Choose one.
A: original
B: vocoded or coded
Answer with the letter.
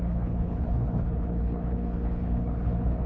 B